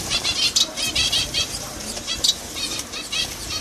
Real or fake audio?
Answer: fake